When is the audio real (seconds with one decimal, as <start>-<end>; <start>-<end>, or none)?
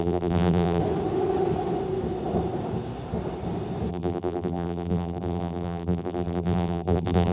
0.8-3.9